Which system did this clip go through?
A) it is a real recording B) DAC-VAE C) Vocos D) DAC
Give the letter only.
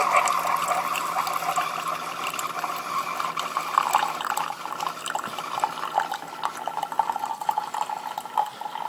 A